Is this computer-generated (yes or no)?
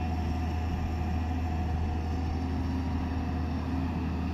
no